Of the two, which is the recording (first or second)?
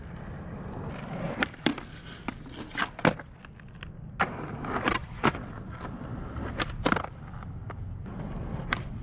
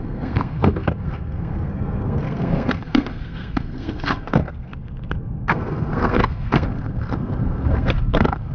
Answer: first